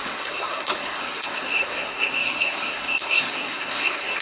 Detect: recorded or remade remade